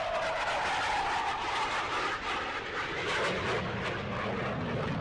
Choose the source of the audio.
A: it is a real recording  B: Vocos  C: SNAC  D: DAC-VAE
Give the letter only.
A